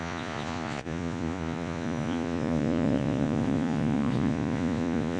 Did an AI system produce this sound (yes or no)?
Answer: yes